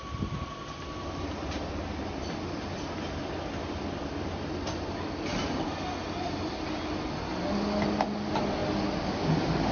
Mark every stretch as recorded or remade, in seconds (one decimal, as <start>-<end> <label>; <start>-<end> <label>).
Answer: 0.0-9.7 recorded